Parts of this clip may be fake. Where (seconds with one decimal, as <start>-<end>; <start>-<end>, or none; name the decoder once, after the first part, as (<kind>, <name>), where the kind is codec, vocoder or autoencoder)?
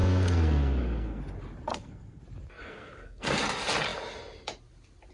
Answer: 0.0-1.2 (codec, SNAC); 1.7-2.2; 2.6-3.3